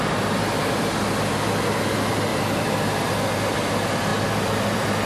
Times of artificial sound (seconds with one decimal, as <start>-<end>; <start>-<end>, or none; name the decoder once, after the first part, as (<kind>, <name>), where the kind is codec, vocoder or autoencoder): 2.3-3.1 (vocoder, BigVGAN v2); 4.1-5.1